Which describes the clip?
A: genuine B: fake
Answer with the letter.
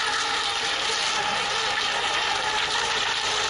A